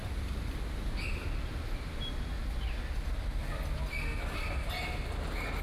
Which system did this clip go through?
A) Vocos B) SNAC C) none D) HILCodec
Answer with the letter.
C